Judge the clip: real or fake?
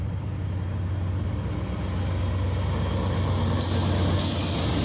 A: real